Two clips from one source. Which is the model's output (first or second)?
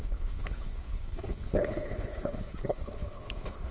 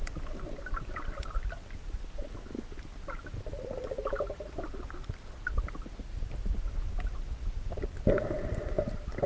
first